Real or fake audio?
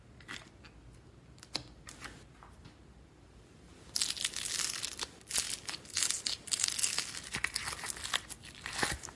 real